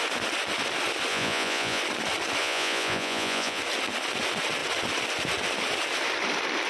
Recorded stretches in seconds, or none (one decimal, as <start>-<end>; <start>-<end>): 0.0-1.1; 1.8-2.4; 3.6-6.7